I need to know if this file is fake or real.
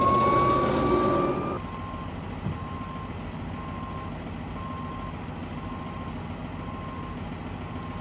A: real